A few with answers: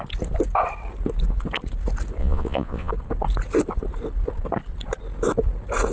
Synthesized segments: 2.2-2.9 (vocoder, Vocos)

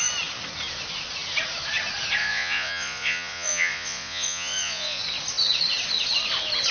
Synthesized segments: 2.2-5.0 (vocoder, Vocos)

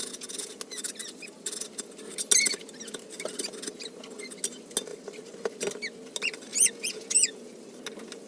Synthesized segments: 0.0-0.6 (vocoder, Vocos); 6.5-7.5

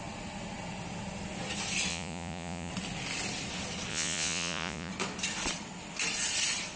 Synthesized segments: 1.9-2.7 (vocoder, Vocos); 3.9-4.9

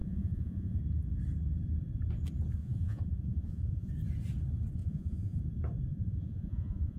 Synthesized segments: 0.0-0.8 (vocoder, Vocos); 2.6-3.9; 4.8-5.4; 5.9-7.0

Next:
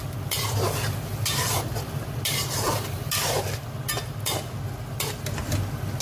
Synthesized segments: none

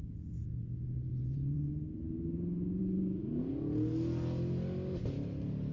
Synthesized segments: 1.1-1.7 (vocoder, Vocos); 2.8-3.4